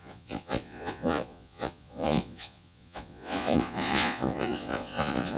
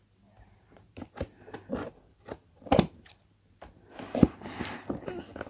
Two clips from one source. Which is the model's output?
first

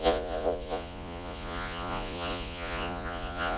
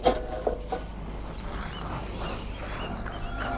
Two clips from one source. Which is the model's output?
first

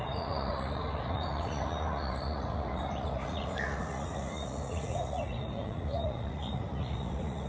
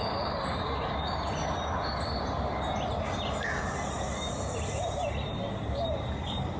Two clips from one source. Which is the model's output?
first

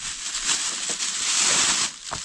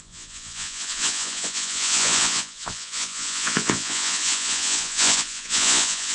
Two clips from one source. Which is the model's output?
second